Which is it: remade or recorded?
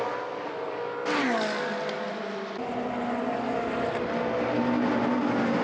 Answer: recorded